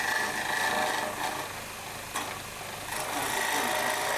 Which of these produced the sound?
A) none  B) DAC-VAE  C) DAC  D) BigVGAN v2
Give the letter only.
A